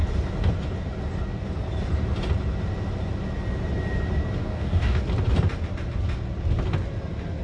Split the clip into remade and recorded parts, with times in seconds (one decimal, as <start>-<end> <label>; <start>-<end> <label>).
0.0-4.4 recorded; 4.4-5.0 remade; 5.0-7.4 recorded